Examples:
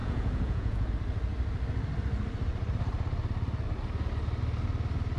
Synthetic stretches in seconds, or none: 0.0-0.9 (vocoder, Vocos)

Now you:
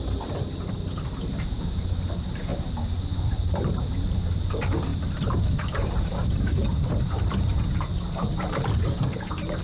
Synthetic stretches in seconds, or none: 0.0-2.5 (vocoder, BigVGAN v2); 3.6-4.9; 6.9-7.5; 8.1-9.6

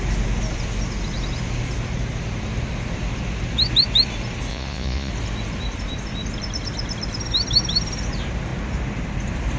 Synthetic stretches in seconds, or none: 4.5-5.1 (vocoder, Vocos)